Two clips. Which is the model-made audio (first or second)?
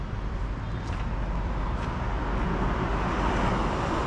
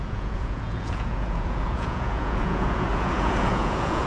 second